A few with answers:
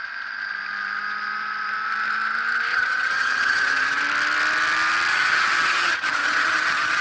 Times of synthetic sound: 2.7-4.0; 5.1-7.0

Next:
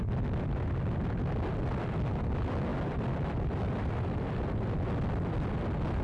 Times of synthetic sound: none

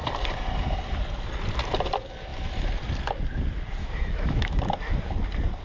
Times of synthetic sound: 3.8-4.6

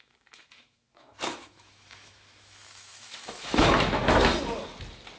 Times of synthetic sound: 0.0-4.3

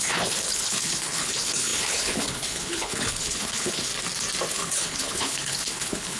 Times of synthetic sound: 0.0-3.9; 4.5-6.2

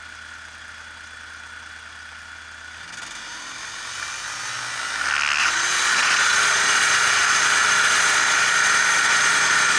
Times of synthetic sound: 5.4-9.8

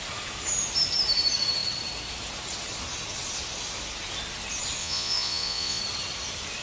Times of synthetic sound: 4.8-5.8